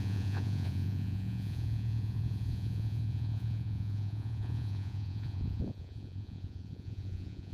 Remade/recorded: remade